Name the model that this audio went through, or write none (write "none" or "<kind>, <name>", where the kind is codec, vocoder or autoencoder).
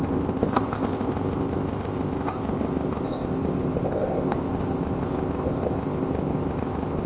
codec, ZipCodec